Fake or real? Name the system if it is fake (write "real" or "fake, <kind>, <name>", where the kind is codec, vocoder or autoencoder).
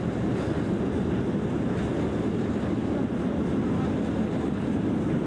real